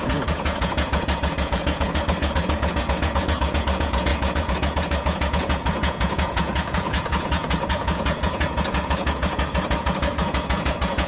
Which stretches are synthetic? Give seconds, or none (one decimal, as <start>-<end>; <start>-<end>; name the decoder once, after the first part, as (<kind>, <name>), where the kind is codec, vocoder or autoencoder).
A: 0.0-11.1 (vocoder, Vocos)